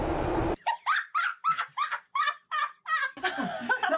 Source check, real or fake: fake